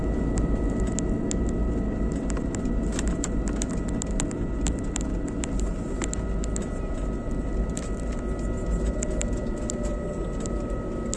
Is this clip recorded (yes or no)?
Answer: yes